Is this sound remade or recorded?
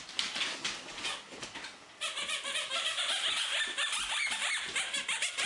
recorded